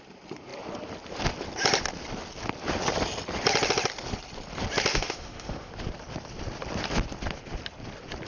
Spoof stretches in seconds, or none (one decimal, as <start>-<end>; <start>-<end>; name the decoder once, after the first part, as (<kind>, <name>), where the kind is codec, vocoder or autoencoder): 4.9-5.7 (autoencoder, DAC-VAE)